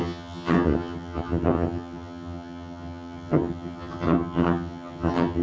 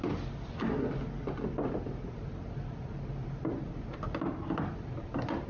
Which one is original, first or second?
second